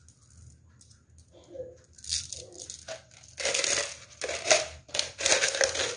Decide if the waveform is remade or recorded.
recorded